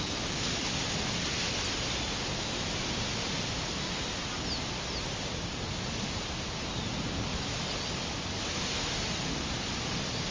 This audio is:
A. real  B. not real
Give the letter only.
A